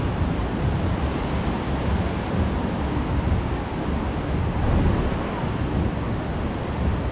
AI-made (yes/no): no